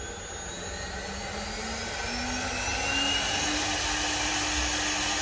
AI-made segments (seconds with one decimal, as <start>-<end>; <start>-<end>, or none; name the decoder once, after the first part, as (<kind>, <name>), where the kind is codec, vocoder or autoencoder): none